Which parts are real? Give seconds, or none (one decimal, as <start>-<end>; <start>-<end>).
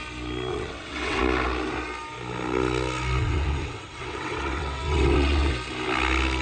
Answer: 0.0-0.5; 1.2-3.2; 5.5-6.4